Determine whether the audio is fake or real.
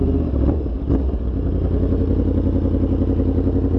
real